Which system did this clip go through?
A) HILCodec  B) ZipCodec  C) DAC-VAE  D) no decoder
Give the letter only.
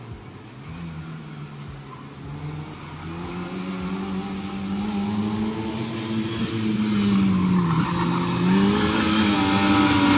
D